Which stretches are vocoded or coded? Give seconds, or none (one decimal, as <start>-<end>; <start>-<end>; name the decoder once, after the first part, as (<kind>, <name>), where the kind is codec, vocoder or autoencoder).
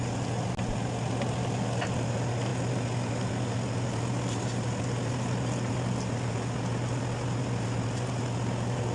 none